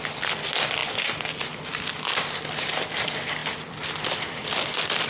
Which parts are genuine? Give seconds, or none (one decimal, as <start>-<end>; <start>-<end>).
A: 0.0-3.4